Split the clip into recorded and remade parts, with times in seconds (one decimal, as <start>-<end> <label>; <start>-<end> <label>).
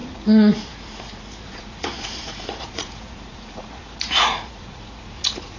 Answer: 0.0-5.6 remade